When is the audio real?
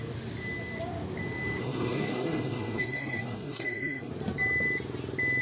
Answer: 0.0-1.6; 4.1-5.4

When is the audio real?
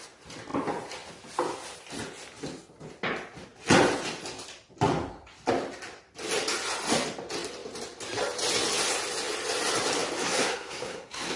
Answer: 0.0-10.2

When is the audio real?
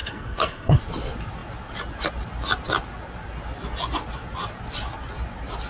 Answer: 0.8-5.7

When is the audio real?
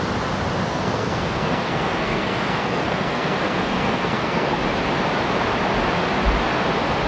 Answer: 0.0-0.7; 4.6-7.1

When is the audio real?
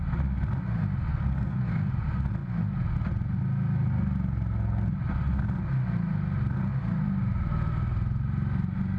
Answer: 0.0-1.1; 1.9-9.0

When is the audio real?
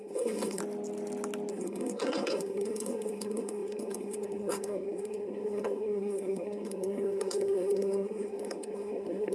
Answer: 0.6-1.5